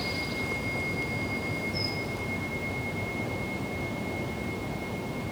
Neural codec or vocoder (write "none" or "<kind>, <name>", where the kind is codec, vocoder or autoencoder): none